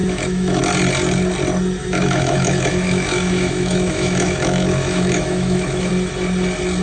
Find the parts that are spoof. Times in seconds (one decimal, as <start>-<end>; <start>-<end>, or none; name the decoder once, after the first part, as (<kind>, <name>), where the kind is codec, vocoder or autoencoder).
0.0-0.6 (autoencoder, DAC-VAE); 1.8-5.9